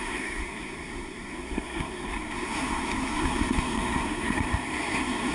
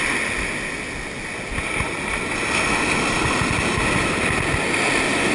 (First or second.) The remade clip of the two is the first